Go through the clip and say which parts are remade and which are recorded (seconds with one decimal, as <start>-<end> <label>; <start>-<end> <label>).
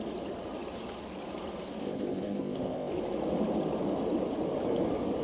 0.0-1.8 recorded; 1.8-2.9 remade; 2.9-5.2 recorded